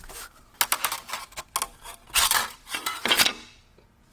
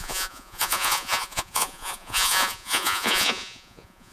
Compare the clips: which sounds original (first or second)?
first